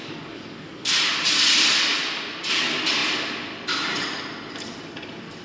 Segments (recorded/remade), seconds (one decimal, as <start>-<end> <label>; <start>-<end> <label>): 0.0-0.9 remade; 0.9-5.4 recorded